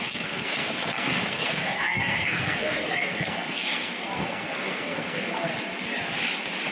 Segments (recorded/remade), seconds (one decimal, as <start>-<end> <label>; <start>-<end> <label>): 0.0-5.5 remade; 5.5-6.7 recorded